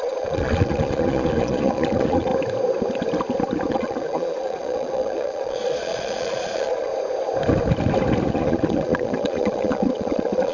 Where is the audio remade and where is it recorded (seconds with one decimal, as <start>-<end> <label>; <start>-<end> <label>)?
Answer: 0.0-2.3 remade; 2.3-3.7 recorded; 3.7-6.9 remade; 6.9-8.3 recorded; 8.3-10.5 remade